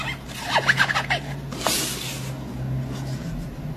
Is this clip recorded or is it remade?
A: recorded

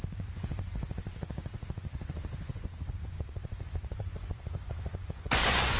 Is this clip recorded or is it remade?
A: remade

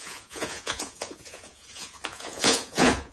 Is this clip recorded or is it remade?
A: remade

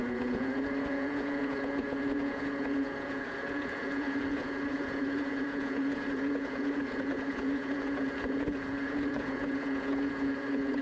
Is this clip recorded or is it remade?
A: remade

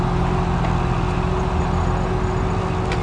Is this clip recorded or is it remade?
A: recorded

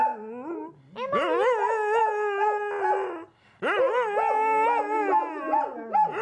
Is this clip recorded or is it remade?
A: recorded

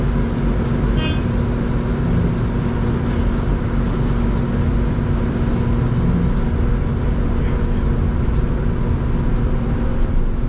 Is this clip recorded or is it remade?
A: recorded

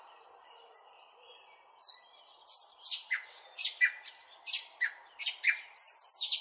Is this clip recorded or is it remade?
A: recorded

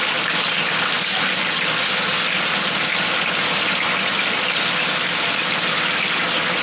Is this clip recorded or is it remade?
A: recorded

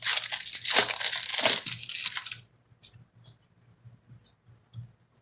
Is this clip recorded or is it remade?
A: recorded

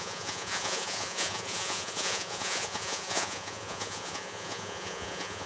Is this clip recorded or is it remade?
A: remade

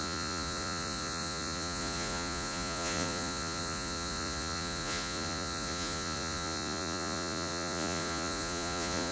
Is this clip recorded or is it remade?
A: remade